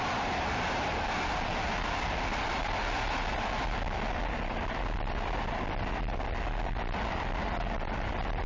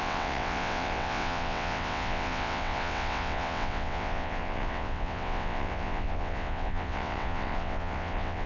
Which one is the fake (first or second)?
second